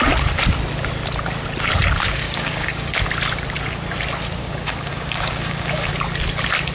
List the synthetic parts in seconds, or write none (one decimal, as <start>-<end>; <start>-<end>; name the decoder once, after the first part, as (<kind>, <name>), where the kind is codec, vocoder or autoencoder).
2.2-2.9 (codec, DAC); 4.4-5.9